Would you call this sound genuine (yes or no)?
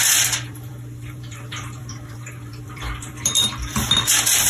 no